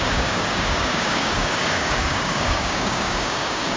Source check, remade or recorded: remade